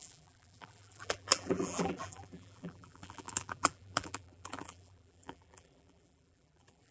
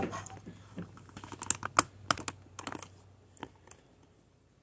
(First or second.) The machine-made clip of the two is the first